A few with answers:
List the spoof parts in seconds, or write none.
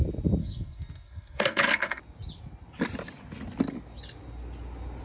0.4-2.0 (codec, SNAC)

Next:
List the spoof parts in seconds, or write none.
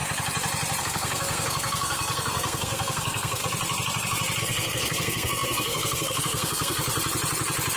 0.8-3.4 (codec, SNAC); 4.4-6.9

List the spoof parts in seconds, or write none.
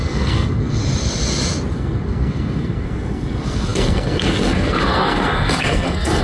0.0-0.8 (codec, SNAC); 1.7-6.2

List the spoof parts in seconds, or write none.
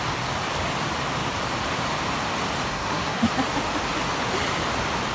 2.7-3.3 (codec, SNAC)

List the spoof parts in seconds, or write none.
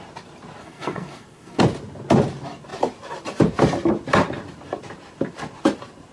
0.6-1.6 (codec, SNAC)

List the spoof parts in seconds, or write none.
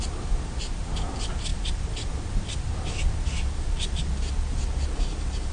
none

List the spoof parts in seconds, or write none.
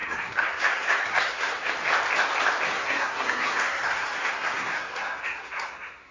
0.0-1.7 (codec, SNAC); 2.7-6.1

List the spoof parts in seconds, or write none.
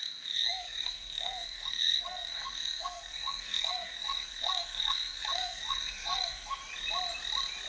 0.0-6.6 (codec, SNAC)